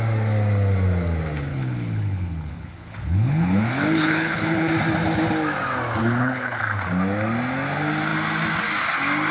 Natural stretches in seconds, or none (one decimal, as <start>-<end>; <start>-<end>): 0.0-1.5; 4.7-6.0; 6.6-9.3